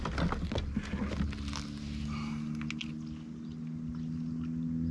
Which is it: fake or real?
real